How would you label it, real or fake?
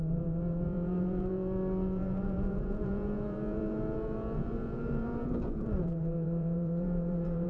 fake